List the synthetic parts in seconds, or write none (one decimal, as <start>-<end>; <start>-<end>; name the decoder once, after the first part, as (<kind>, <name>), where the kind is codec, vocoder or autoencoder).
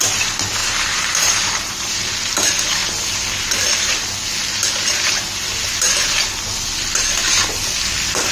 0.6-2.0 (vocoder, BigVGAN v2)